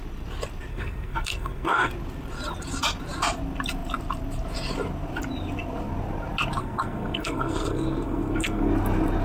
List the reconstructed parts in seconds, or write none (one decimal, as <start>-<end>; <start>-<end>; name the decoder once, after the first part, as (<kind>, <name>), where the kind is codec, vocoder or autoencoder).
0.7-1.9 (codec, SNAC); 6.6-8.7